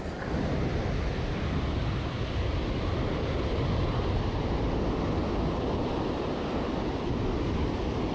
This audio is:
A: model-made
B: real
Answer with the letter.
B